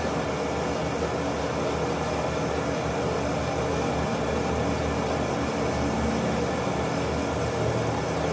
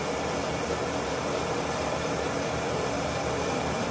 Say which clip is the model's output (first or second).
second